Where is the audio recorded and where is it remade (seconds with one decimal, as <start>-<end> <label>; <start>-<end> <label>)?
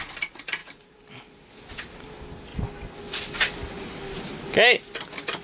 0.0-0.6 recorded; 0.6-1.5 remade; 1.5-5.4 recorded